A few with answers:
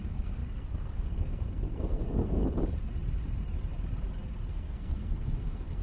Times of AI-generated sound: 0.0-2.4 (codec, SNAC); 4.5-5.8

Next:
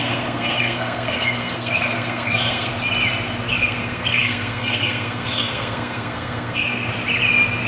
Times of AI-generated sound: 0.0-2.7 (codec, SNAC); 3.5-6.9

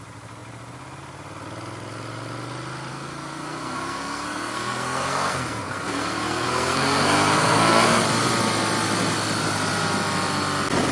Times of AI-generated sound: 2.9-8.0 (codec, SNAC)

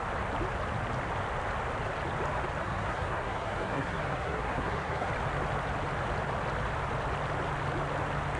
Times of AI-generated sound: 2.6-5.1 (codec, SNAC)

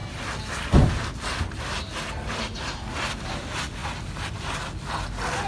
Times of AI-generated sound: none

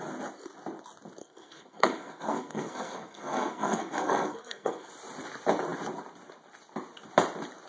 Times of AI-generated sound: 1.2-4.9 (codec, SNAC)

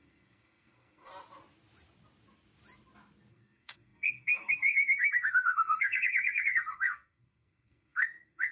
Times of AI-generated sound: 0.0-1.1 (codec, SNAC); 3.3-8.5

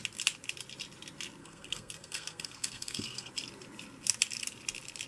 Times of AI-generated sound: 1.4-3.3 (codec, SNAC)